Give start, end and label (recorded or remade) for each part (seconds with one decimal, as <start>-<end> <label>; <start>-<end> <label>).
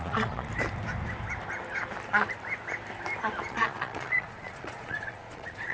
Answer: 0.0-0.5 remade; 0.5-3.5 recorded; 3.5-5.7 remade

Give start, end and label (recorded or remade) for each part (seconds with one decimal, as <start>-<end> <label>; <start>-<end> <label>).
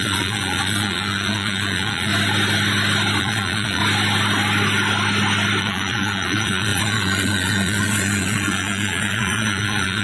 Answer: 0.0-2.1 remade; 2.1-3.2 recorded; 3.2-3.8 remade; 3.8-5.6 recorded; 5.6-10.0 remade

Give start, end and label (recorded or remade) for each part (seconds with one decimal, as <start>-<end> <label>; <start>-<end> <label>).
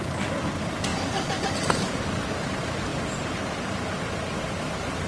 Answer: 0.0-5.1 recorded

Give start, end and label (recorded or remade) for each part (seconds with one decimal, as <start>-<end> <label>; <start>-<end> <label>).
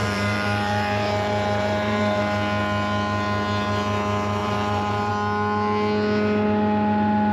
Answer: 0.0-2.2 remade; 2.2-4.4 recorded; 4.4-5.1 remade; 5.1-7.3 recorded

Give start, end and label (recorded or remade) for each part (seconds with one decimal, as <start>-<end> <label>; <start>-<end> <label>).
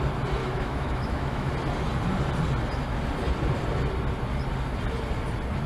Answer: 0.0-0.4 recorded; 0.4-1.5 remade; 1.5-5.7 recorded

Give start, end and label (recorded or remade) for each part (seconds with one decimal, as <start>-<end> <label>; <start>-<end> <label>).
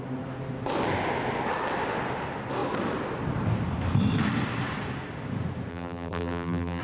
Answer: 0.0-5.7 recorded; 5.7-6.8 remade